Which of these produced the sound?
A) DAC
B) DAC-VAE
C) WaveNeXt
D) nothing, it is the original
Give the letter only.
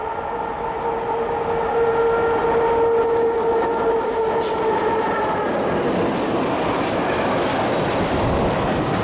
D